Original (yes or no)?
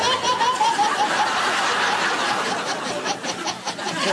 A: yes